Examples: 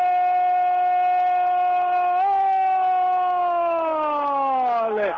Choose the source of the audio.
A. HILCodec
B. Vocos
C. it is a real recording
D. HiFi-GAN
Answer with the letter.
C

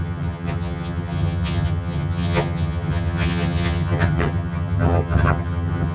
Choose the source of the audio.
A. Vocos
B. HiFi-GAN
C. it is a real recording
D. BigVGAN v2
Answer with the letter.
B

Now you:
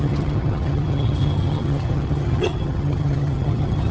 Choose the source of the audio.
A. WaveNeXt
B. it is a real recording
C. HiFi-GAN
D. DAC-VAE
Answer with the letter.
C